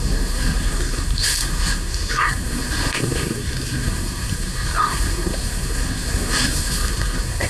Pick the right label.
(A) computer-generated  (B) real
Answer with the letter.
A